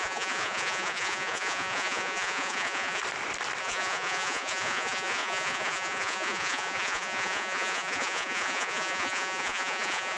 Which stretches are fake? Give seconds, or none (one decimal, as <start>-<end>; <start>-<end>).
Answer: 0.0-3.0; 3.6-10.2